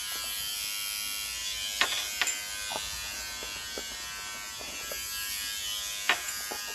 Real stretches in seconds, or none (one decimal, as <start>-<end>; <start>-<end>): 0.0-6.7